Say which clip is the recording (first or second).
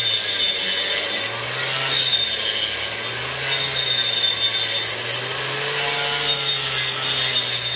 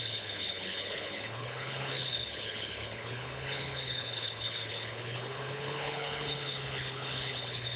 first